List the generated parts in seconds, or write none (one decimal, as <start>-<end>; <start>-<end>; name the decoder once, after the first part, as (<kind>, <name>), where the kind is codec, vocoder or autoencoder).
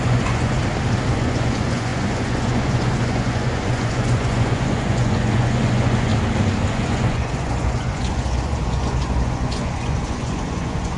0.0-0.6 (vocoder, Vocos); 1.1-6.1; 6.7-11.0